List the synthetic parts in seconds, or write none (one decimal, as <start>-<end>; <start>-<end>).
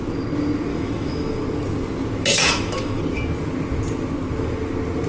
0.7-1.4; 2.3-3.0